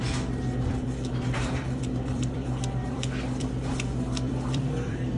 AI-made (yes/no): yes